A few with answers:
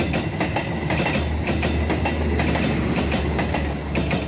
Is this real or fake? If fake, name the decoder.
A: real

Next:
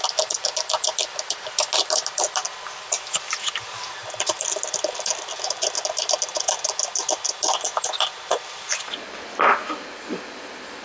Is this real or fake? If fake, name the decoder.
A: real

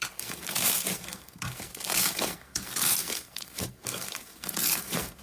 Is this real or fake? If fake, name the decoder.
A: fake, codec, SNAC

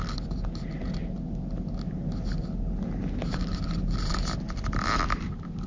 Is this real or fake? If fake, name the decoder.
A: real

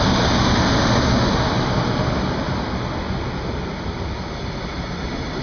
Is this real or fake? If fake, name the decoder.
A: real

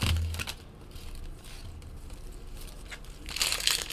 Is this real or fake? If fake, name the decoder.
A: real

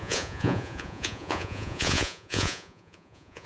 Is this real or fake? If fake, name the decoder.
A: fake, vocoder, Vocos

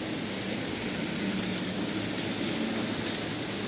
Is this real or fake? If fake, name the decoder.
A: real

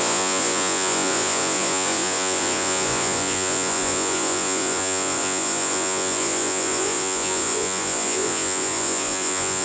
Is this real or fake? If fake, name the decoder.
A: fake, vocoder, Vocos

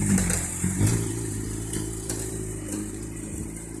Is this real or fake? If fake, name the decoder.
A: fake, vocoder, BigVGAN v2